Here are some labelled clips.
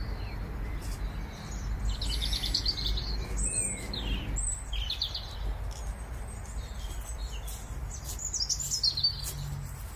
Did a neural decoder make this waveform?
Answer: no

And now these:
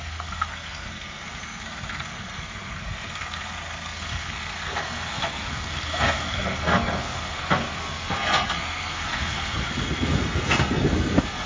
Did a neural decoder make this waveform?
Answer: yes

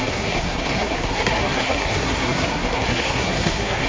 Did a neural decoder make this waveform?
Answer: yes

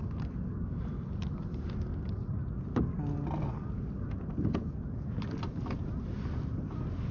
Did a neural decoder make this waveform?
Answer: no